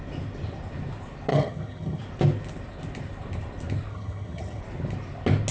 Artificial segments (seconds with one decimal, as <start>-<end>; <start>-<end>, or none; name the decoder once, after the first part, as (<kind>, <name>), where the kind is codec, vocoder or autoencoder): 1.3-2.0 (vocoder, HiFi-GAN); 3.9-4.6